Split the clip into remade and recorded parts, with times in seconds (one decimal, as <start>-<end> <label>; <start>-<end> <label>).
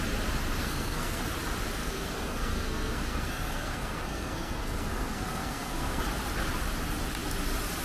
0.0-0.6 recorded; 0.6-1.2 remade; 1.2-1.8 recorded; 1.8-6.0 remade; 6.0-7.8 recorded